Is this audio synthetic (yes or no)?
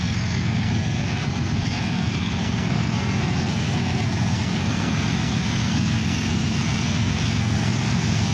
yes